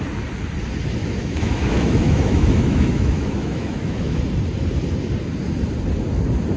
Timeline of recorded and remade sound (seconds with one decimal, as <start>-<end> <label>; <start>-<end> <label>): 0.0-1.0 recorded; 1.0-4.2 remade; 4.2-6.6 recorded